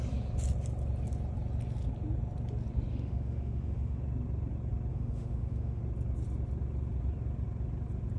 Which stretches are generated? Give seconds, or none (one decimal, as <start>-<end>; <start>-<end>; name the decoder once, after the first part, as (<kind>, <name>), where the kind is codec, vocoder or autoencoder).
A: 2.9-4.0 (autoencoder, DAC-VAE); 4.9-5.8

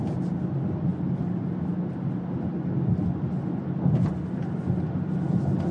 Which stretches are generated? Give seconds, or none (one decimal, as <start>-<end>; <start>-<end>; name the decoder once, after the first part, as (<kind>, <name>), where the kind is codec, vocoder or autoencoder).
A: none

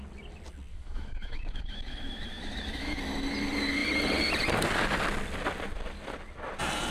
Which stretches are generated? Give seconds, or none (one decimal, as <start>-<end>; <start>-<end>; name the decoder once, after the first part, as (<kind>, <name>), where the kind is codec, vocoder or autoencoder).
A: 0.7-3.0 (autoencoder, DAC-VAE)

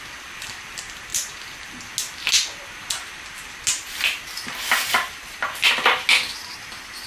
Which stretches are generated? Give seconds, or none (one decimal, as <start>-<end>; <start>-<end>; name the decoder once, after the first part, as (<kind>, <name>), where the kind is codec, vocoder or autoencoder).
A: none

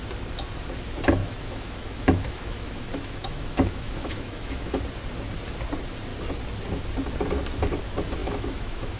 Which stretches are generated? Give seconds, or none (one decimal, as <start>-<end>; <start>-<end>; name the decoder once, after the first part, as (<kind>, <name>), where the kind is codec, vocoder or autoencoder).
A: 1.2-4.8 (autoencoder, DAC-VAE); 8.2-9.0